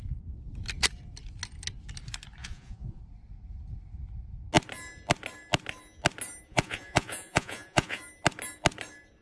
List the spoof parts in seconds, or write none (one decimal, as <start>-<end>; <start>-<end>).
2.4-3.0; 6.5-8.0